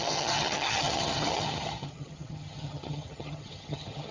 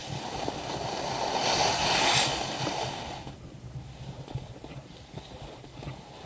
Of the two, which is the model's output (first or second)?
first